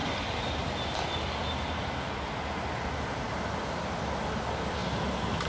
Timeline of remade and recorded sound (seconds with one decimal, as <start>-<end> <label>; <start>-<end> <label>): 0.0-5.5 recorded